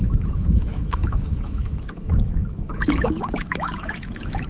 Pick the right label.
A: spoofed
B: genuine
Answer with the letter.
A